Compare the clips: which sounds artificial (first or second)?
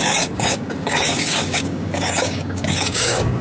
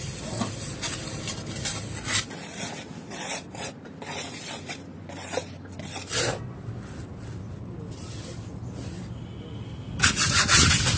first